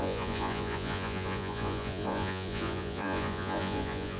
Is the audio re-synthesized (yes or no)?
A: yes